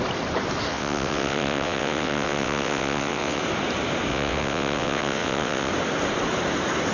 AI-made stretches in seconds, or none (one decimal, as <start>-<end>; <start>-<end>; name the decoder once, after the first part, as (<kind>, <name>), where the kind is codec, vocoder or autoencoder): 0.7-3.4 (vocoder, WaveNeXt); 4.1-5.7